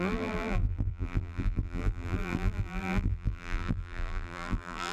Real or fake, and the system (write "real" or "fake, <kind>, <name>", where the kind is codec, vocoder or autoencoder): fake, vocoder, BigVGAN v2